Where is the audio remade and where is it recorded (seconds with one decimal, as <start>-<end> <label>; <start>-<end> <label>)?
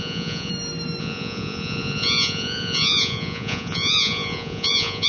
0.0-0.5 remade; 0.5-1.0 recorded; 1.0-5.1 remade